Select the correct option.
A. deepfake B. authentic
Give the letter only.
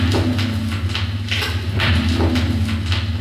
B